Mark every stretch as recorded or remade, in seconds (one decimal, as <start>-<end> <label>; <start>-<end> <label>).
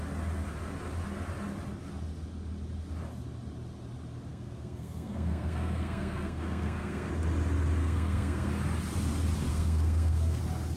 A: 0.0-4.3 recorded; 4.3-7.1 remade; 7.1-7.8 recorded; 7.8-8.5 remade; 8.5-9.5 recorded; 9.5-10.4 remade; 10.4-10.8 recorded